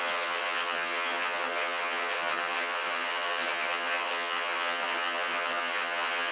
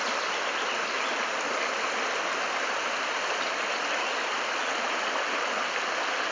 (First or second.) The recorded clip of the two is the second